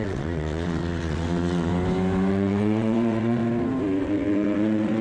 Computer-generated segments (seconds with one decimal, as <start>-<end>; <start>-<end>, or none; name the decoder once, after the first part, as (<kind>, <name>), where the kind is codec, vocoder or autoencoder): 0.0-1.7 (vocoder, WaveNeXt); 2.3-3.4; 4.0-5.0